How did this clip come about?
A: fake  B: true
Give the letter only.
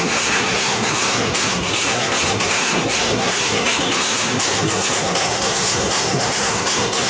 A